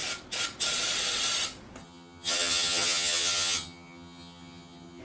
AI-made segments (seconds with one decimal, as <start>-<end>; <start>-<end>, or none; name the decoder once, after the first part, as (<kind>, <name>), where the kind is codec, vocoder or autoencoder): 1.8-5.0 (vocoder, HiFi-GAN)